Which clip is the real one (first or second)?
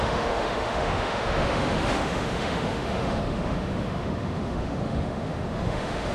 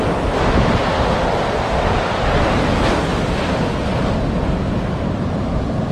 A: second